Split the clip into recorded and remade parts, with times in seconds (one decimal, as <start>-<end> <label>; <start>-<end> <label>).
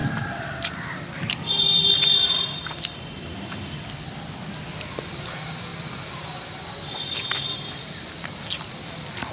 0.0-9.3 remade